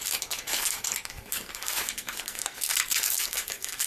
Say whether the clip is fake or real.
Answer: fake